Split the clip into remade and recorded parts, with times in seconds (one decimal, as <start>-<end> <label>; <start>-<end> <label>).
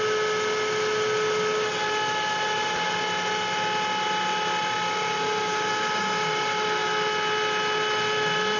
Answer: 0.0-8.6 recorded